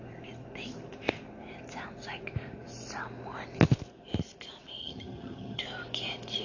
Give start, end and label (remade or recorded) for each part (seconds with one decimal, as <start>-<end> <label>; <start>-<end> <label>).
0.0-4.8 recorded; 4.8-5.6 remade; 5.6-6.4 recorded